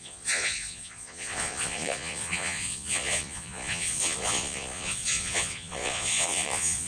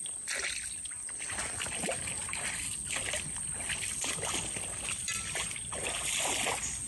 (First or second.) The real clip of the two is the second